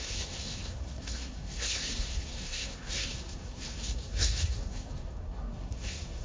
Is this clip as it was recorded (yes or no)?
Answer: no